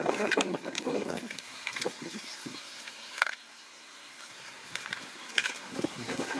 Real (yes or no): no